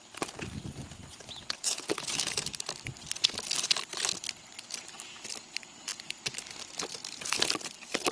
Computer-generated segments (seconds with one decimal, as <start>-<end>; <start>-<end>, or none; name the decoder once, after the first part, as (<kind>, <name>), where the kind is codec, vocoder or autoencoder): none